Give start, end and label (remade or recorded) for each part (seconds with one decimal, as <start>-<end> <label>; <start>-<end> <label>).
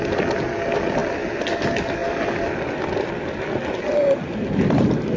0.0-5.2 recorded